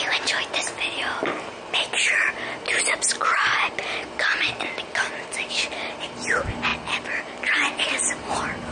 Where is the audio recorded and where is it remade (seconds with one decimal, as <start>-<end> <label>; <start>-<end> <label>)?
0.0-8.7 recorded